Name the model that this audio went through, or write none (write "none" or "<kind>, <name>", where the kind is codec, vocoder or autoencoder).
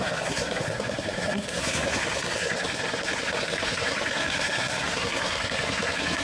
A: codec, SNAC